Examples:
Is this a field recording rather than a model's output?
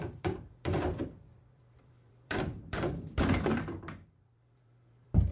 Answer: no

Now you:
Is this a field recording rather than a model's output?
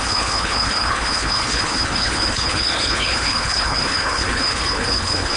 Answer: no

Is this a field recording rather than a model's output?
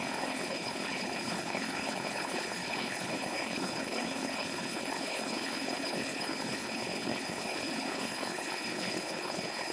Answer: no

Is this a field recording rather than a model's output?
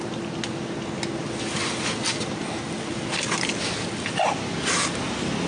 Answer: yes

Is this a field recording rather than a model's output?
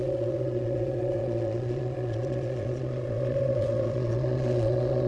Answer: no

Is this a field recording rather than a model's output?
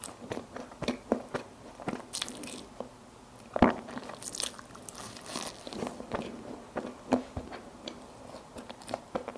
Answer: yes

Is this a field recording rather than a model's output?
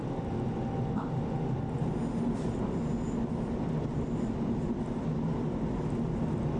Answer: yes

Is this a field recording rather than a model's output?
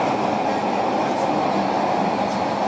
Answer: yes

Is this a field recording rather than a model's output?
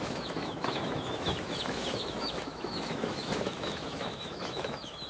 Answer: no